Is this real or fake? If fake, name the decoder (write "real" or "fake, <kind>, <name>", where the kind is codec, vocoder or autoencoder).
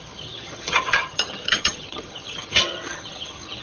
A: fake, vocoder, HiFi-GAN